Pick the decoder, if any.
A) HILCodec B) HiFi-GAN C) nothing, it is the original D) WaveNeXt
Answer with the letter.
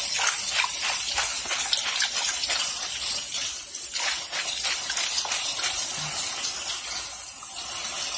C